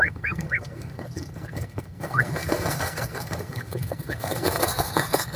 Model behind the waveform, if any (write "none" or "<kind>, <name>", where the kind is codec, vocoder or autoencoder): codec, SNAC